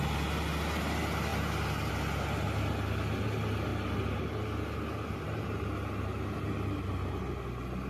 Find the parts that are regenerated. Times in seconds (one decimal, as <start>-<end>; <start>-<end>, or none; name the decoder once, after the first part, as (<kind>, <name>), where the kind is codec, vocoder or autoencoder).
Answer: none